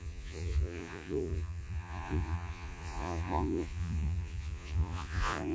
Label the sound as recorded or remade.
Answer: remade